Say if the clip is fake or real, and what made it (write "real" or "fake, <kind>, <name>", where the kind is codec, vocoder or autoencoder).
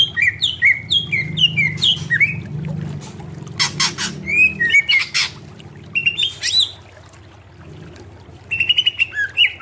real